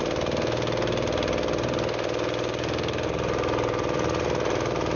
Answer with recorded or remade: recorded